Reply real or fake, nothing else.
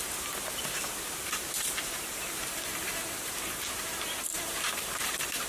fake